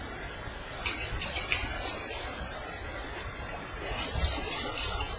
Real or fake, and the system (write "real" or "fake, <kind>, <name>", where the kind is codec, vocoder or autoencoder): fake, vocoder, BigVGAN v2